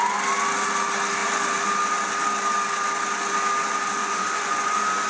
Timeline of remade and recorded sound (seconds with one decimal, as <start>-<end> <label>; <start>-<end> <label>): 0.0-4.0 recorded; 4.0-5.1 remade